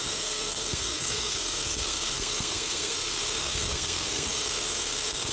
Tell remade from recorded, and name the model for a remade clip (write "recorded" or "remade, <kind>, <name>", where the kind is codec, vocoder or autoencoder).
remade, codec, SNAC